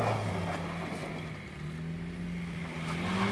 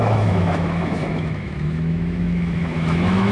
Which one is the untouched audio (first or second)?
first